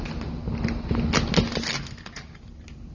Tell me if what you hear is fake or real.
real